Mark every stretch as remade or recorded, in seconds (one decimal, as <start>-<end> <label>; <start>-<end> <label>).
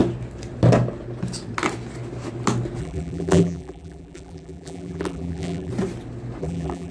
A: 0.0-2.8 recorded; 2.8-5.7 remade; 5.7-6.4 recorded; 6.4-6.9 remade